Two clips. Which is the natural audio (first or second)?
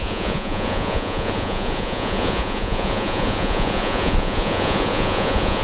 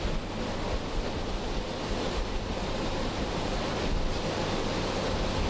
second